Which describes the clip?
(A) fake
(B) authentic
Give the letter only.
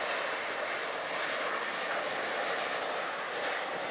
B